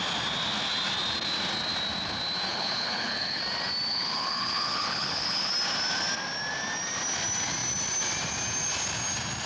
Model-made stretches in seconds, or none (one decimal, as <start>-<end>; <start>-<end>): 2.5-3.4; 3.9-5.5